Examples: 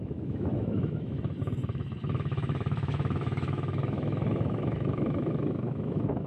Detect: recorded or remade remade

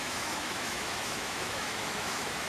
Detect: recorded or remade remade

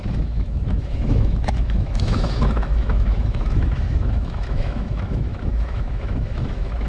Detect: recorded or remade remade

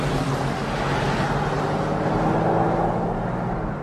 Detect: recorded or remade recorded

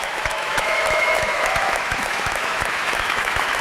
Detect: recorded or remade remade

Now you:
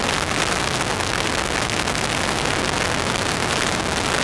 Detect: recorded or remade recorded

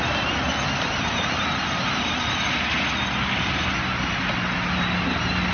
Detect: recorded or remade recorded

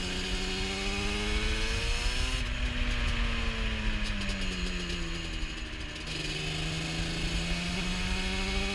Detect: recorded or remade recorded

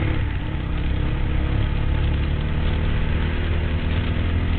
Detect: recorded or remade recorded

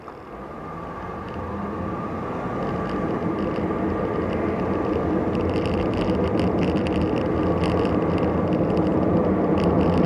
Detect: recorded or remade recorded